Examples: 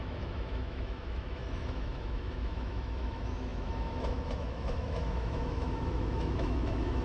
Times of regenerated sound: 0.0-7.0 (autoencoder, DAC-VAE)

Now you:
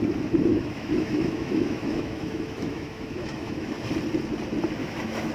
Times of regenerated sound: 0.5-3.7 (autoencoder, DAC-VAE); 4.8-5.3

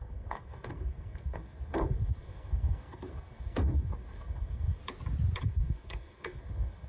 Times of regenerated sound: 0.0-4.8 (codec, SNAC); 5.4-6.9

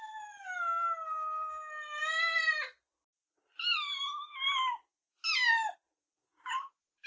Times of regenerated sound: none

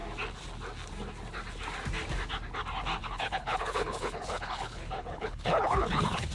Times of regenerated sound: 3.0-6.3 (codec, HILCodec)

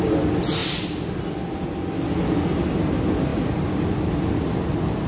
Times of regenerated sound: none

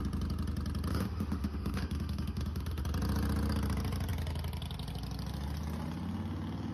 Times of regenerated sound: 0.9-2.8 (autoencoder, DAC-VAE)